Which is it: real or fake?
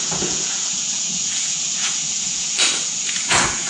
fake